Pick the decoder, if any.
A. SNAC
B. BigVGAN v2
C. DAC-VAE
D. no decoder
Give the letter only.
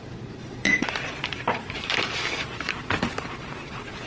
B